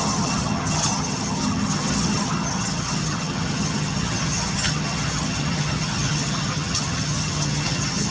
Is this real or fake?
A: fake